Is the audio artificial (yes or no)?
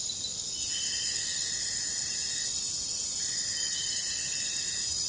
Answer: no